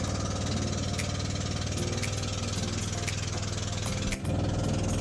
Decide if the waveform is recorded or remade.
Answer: recorded